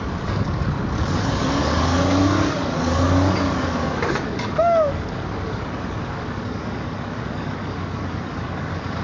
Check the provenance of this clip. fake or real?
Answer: fake